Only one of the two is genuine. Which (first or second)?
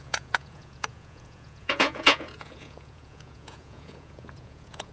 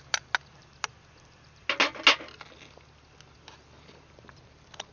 second